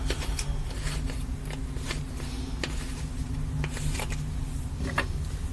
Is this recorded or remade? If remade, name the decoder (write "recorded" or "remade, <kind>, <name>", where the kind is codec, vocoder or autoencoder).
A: recorded